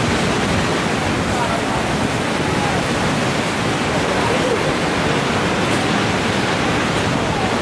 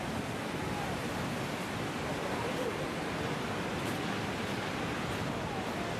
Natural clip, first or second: second